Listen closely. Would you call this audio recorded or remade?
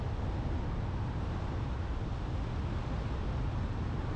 recorded